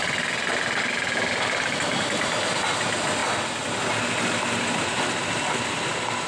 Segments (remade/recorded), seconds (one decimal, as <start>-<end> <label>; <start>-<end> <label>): 0.0-6.3 recorded